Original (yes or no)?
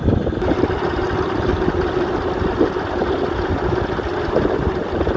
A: yes